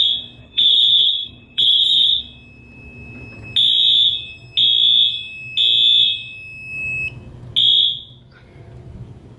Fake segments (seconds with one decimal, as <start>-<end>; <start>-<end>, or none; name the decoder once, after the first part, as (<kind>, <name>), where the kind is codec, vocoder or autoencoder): 0.4-2.2 (codec, HILCodec)